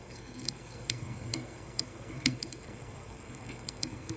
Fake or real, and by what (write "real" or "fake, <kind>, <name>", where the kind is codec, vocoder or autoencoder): fake, codec, SNAC